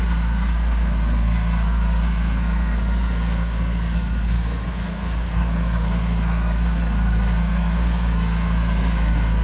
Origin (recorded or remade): remade